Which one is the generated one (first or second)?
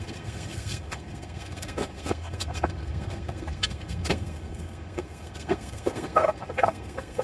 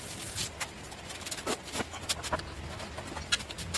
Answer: first